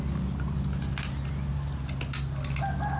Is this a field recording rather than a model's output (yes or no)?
yes